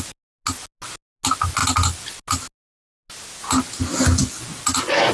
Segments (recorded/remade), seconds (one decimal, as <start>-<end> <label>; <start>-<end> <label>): 0.0-5.1 recorded